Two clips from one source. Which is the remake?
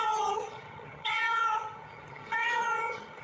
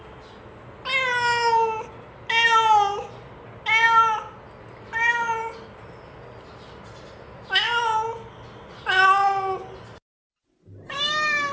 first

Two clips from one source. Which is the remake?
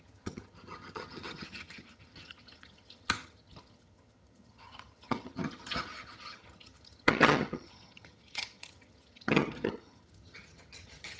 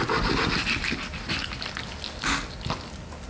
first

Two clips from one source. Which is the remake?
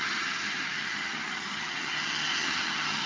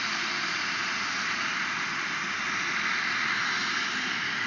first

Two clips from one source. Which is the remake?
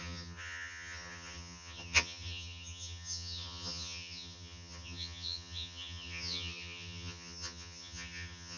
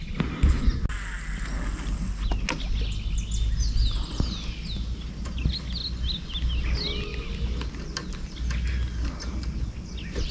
first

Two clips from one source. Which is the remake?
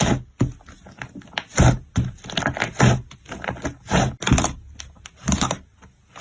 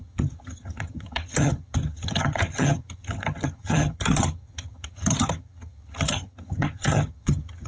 second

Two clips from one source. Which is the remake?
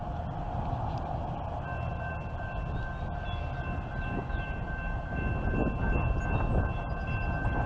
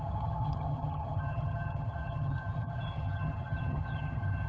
second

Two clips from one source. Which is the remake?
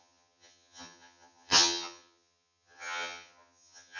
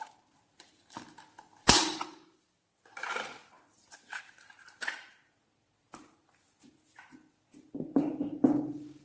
first